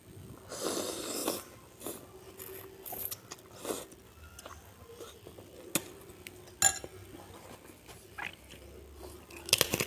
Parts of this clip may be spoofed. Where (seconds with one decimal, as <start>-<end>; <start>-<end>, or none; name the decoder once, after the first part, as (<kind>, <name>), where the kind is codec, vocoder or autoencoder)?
none